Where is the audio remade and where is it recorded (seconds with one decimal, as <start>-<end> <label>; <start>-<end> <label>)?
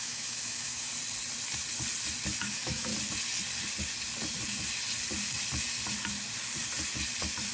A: 0.0-0.9 remade; 0.9-2.4 recorded; 2.4-2.9 remade; 2.9-7.5 recorded